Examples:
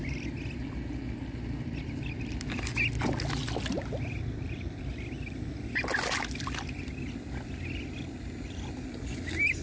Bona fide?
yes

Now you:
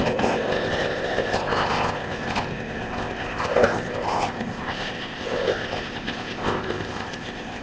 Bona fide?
no